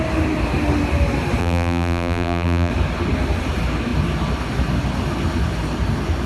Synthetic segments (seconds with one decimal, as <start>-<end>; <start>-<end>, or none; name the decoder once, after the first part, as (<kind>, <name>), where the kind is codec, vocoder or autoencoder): 1.4-2.7 (vocoder, BigVGAN v2)

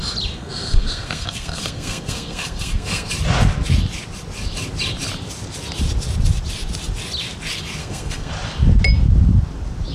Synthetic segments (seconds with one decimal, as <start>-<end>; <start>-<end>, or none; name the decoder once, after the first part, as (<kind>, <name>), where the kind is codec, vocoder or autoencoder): 0.4-3.1 (codec, SNAC); 7.8-8.3

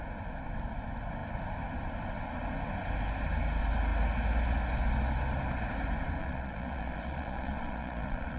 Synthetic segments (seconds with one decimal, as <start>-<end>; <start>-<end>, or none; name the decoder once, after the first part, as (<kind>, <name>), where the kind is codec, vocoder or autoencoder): 6.2-8.4 (vocoder, Vocos)